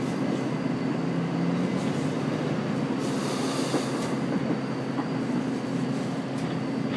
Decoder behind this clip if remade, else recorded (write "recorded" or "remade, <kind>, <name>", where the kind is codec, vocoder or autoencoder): recorded